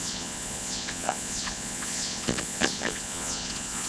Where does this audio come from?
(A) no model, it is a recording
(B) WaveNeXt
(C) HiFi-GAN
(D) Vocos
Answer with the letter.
D